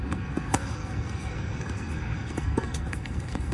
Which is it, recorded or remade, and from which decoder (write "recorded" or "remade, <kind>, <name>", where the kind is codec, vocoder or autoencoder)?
remade, codec, SNAC